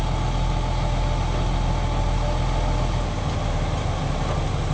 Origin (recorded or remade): recorded